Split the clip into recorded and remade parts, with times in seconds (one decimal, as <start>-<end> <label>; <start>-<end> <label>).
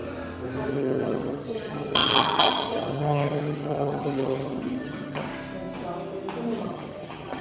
0.0-0.7 recorded; 0.7-5.3 remade; 5.3-6.6 recorded; 6.6-7.4 remade